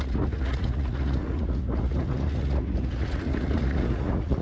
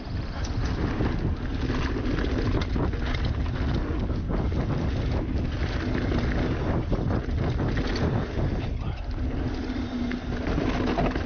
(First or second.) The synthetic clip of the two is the first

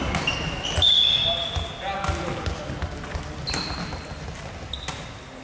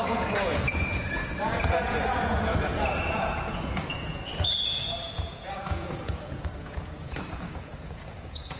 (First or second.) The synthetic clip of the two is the second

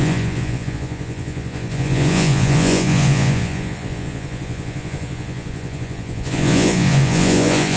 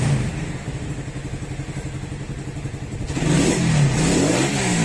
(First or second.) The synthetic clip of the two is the first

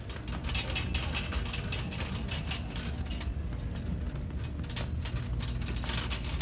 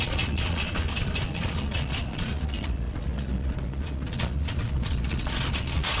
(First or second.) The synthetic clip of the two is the second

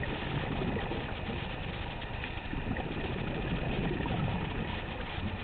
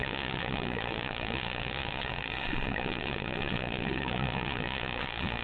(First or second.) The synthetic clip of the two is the second